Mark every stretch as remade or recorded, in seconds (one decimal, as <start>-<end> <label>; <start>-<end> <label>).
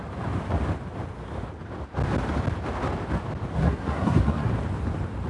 0.0-3.5 recorded; 3.5-4.5 remade; 4.5-5.3 recorded